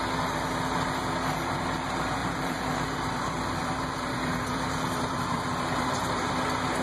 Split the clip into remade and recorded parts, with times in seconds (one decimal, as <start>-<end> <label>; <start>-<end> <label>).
0.0-2.2 recorded; 2.2-6.3 remade; 6.3-6.8 recorded